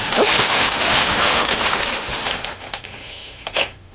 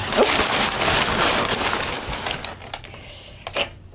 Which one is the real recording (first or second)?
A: second